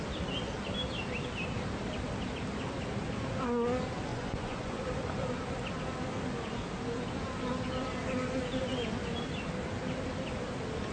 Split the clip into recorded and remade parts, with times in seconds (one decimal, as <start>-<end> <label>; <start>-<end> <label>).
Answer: 0.0-4.1 recorded; 4.1-4.8 remade; 4.8-10.9 recorded